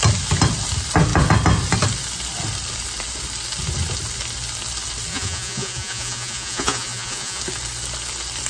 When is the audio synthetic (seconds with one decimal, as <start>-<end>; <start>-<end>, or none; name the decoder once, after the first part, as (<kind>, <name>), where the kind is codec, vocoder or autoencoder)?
5.1-7.4 (vocoder, Vocos)